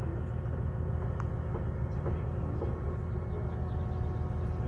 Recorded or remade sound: recorded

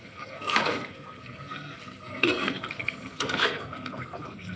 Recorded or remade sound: remade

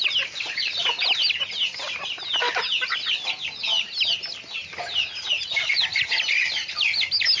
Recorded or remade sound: recorded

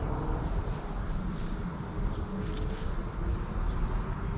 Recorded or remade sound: recorded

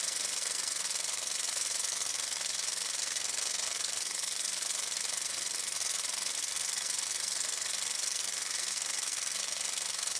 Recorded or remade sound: remade